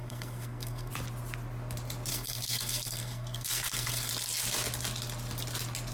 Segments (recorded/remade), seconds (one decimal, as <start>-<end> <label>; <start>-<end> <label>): 0.0-0.9 remade; 0.9-2.1 recorded; 2.1-4.1 remade; 4.1-5.9 recorded